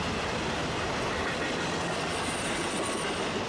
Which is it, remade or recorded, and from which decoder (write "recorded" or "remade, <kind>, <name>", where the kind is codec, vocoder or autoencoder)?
recorded